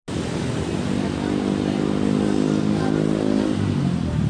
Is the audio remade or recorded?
recorded